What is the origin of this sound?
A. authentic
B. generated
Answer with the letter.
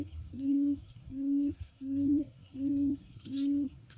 B